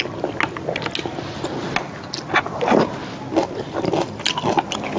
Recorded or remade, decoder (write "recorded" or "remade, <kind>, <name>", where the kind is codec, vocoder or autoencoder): recorded